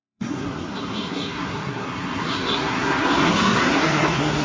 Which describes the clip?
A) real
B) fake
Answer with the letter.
B